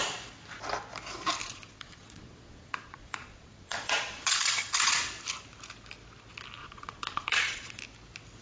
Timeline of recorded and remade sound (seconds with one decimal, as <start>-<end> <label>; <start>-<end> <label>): 0.0-1.4 recorded; 1.4-4.7 remade; 4.7-6.6 recorded; 6.6-7.8 remade; 7.8-8.4 recorded